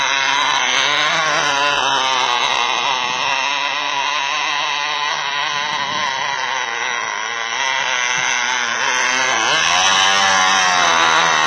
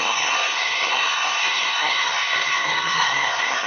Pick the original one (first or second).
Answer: first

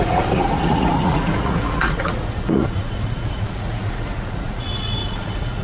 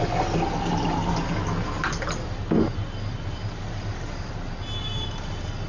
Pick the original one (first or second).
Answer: second